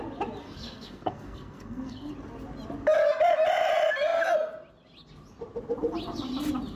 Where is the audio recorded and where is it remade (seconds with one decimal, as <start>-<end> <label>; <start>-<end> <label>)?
0.0-0.4 recorded; 0.4-2.1 remade; 2.1-6.8 recorded